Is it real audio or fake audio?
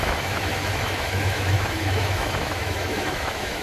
fake